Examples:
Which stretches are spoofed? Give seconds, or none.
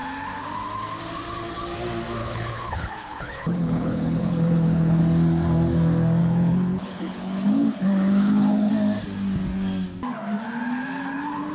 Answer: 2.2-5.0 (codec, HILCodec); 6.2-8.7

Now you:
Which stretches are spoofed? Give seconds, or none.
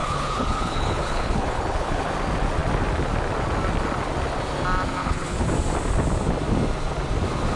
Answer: 0.0-2.1 (codec, HILCodec); 5.0-5.5